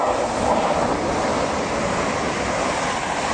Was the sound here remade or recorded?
recorded